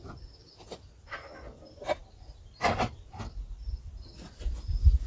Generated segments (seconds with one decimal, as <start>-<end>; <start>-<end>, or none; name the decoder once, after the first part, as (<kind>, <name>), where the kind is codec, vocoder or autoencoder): none